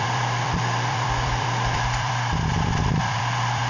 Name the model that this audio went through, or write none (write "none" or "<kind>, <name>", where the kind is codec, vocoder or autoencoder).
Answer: vocoder, BigVGAN v2